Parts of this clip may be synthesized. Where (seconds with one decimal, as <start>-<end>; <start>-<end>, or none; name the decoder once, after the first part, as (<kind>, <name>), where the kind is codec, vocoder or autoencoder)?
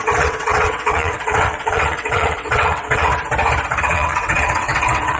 0.0-3.1 (vocoder, WaveNeXt); 3.8-5.2